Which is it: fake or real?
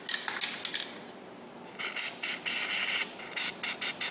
real